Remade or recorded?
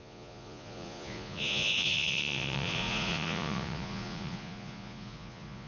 remade